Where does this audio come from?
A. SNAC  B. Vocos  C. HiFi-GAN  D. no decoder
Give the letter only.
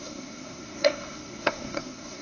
A